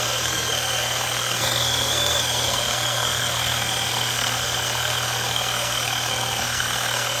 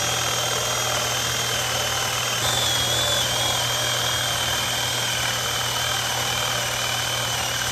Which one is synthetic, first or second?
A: first